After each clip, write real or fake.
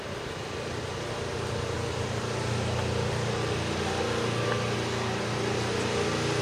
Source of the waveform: real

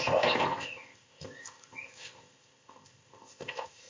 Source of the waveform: fake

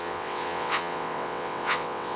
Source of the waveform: fake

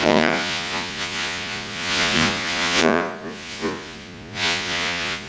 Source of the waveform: fake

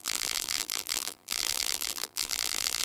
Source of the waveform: fake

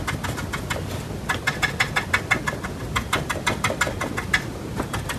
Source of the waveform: real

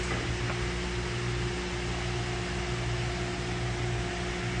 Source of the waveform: real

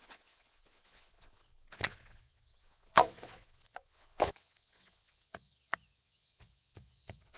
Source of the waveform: fake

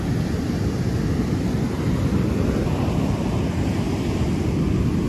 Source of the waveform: real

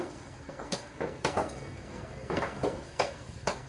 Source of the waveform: fake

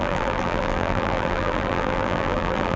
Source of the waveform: fake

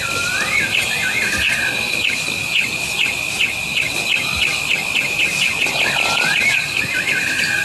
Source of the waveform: real